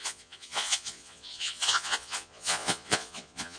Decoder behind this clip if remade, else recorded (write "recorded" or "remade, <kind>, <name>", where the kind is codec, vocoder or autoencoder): remade, vocoder, Vocos